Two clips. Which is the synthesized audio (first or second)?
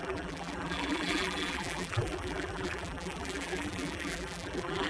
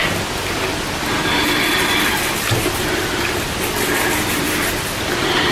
first